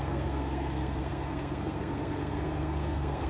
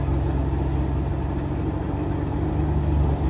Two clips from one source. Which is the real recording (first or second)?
second